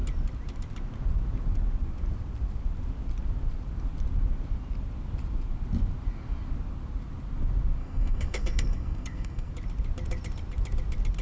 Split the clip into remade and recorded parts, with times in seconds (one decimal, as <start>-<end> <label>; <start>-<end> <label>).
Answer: 0.0-7.8 recorded; 7.8-9.5 remade; 9.5-11.2 recorded